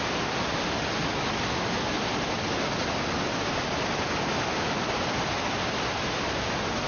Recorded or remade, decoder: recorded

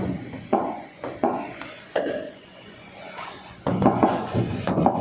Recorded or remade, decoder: remade, vocoder, Vocos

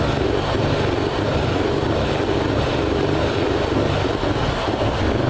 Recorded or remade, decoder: recorded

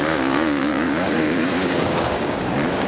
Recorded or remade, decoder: remade, codec, DAC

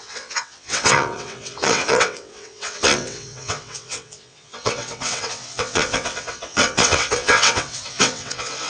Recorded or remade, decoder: remade, vocoder, WaveNeXt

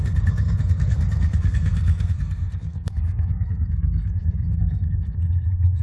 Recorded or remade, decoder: remade, codec, SNAC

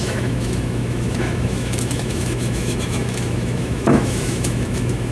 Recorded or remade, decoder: remade, autoencoder, DAC-VAE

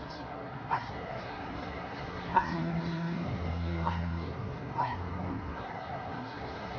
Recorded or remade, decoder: remade, codec, SNAC